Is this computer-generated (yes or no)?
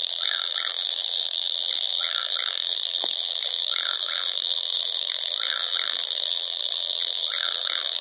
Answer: yes